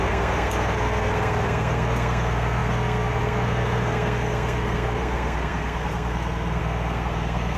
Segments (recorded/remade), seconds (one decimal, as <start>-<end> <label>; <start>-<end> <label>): 0.0-7.6 remade